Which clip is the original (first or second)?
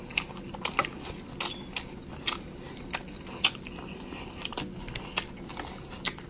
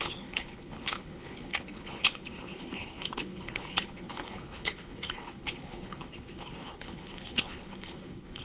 first